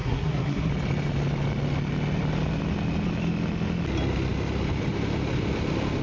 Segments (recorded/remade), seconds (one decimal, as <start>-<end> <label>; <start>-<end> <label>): 0.0-0.7 remade; 0.7-6.0 recorded